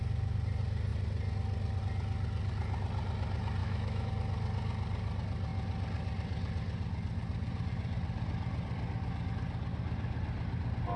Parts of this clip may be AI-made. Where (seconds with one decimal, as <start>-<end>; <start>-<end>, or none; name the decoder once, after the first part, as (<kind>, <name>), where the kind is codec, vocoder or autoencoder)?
3.6-4.1 (autoencoder, DAC-VAE)